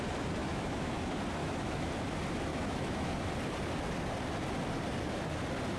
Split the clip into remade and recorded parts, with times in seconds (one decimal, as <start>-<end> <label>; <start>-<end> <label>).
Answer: 0.0-0.4 recorded; 0.4-1.0 remade; 1.0-1.4 recorded; 1.4-1.9 remade; 1.9-2.5 recorded; 2.5-3.1 remade; 3.1-5.8 recorded